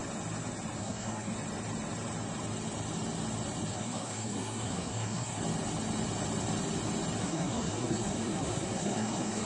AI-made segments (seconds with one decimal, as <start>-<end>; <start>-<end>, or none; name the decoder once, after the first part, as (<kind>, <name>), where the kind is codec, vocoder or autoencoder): 0.8-1.3 (codec, SNAC); 3.7-5.4; 7.2-9.5